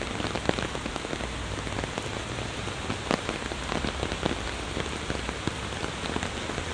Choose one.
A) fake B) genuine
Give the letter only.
B